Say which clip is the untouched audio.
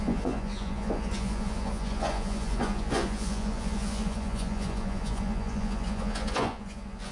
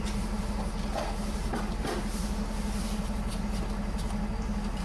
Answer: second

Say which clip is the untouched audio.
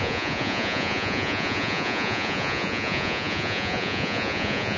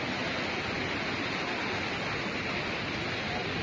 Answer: second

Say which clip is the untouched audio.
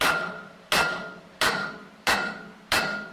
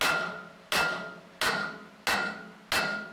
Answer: second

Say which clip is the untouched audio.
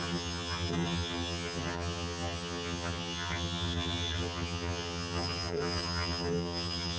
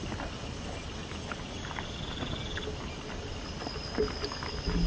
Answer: second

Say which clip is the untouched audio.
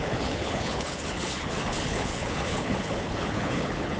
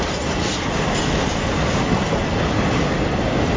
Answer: second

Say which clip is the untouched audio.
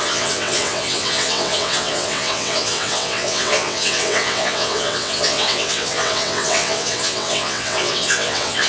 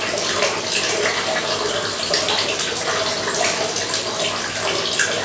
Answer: second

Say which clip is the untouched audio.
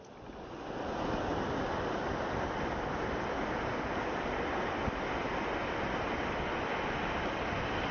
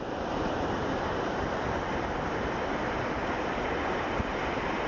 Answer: first